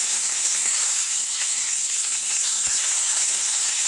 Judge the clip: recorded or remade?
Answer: remade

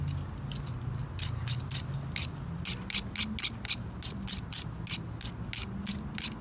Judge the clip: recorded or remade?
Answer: recorded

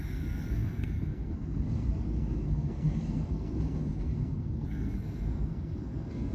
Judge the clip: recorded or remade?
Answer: remade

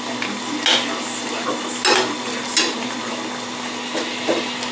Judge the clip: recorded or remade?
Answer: recorded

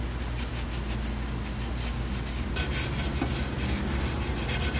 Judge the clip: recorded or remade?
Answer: recorded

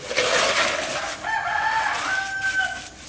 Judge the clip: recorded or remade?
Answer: recorded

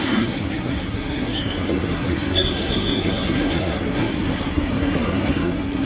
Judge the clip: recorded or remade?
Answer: remade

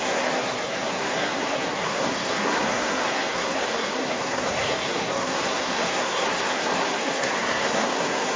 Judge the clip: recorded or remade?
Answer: remade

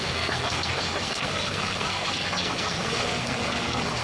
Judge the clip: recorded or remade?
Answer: remade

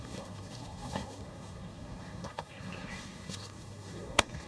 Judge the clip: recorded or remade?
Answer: remade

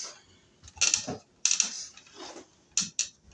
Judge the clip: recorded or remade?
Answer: recorded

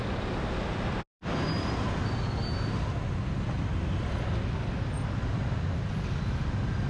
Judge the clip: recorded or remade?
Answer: recorded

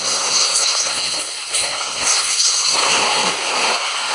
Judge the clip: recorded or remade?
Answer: remade